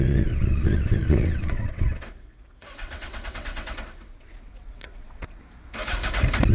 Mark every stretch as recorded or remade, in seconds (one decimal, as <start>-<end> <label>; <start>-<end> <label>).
0.0-5.4 remade; 5.4-6.5 recorded